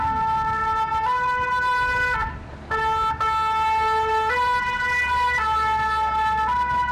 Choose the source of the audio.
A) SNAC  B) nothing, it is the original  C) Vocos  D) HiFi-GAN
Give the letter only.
B